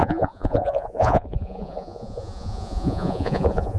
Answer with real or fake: fake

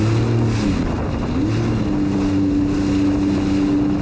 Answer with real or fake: real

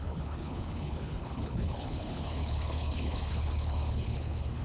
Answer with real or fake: fake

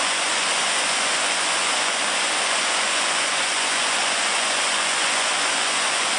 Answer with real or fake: fake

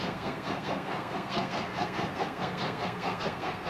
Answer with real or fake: fake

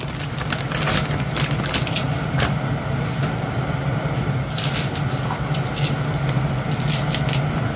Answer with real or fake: real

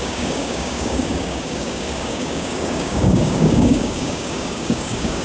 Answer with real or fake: fake